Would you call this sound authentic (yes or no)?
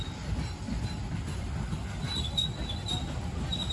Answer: yes